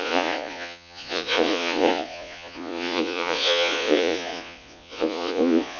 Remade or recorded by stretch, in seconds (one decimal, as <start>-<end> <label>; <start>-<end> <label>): 0.0-5.8 remade